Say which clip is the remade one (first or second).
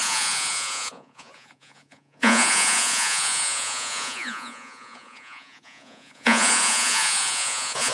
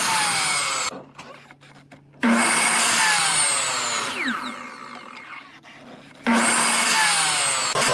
first